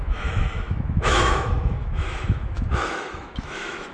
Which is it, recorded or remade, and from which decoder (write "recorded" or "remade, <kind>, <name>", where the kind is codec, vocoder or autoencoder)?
remade, autoencoder, DAC-VAE